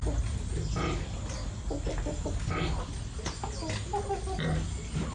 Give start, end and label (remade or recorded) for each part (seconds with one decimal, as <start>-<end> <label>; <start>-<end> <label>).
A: 0.0-5.1 recorded